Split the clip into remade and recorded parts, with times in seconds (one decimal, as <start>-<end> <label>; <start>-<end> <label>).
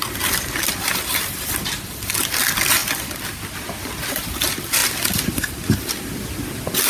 0.0-6.9 recorded